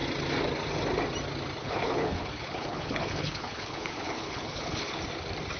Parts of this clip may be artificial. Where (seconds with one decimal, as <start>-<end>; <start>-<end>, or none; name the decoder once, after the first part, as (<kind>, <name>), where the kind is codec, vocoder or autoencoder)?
1.6-5.0 (codec, HILCodec)